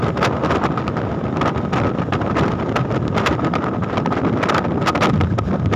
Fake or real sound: fake